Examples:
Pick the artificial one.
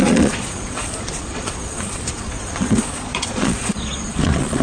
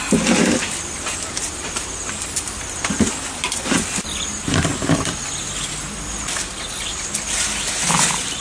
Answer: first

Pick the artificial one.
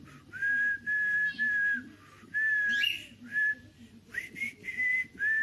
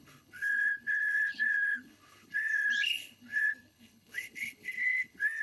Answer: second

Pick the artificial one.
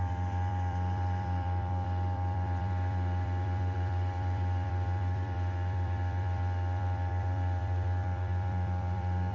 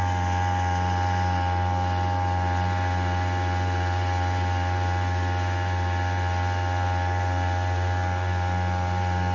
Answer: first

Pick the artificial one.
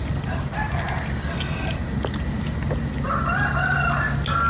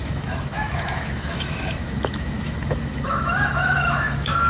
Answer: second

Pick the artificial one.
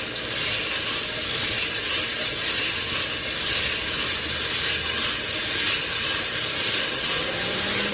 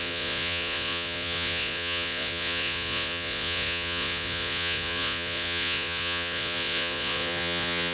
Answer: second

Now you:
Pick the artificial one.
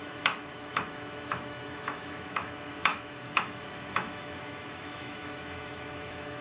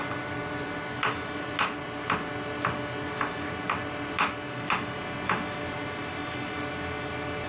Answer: first